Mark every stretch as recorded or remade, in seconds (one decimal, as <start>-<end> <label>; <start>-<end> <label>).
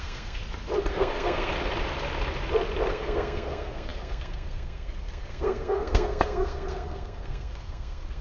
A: 0.0-0.4 remade; 0.4-0.9 recorded; 0.9-1.5 remade; 1.5-2.9 recorded; 2.9-8.2 remade